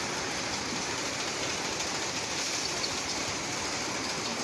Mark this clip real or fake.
fake